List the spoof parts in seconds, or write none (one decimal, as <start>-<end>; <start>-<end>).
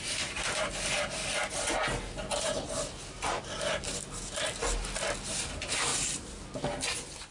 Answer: 0.0-1.2; 3.4-3.9; 5.3-5.9